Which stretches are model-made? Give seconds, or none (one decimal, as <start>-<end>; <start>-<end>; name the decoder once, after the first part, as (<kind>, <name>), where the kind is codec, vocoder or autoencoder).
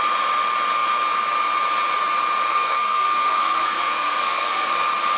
2.5-4.7 (codec, SNAC)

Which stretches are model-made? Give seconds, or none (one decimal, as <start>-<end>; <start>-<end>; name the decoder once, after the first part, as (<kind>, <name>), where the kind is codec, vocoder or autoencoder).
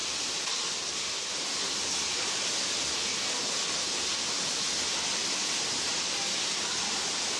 none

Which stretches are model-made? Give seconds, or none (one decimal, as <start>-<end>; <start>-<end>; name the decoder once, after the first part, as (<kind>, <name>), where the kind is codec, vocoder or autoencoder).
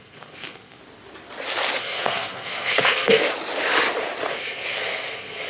0.0-0.8 (codec, SNAC); 1.8-3.2; 4.3-5.5